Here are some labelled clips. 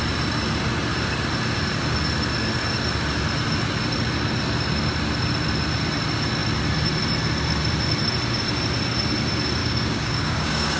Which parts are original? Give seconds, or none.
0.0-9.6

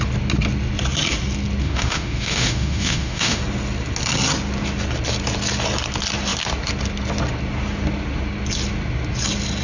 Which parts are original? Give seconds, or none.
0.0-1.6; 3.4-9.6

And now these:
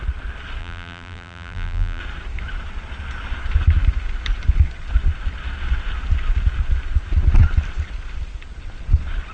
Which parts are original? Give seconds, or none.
0.0-0.6; 2.0-9.3

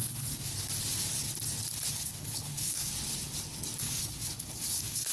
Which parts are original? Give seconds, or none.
0.5-1.9; 2.9-3.8

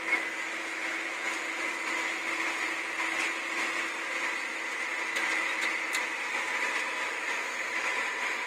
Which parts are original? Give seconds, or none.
0.0-8.5

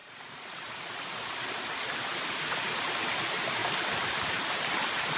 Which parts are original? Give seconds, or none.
0.0-5.2